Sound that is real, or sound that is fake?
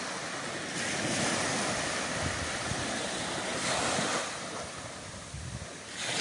real